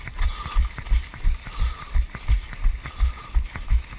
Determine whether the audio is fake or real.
real